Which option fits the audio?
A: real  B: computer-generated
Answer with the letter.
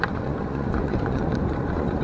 B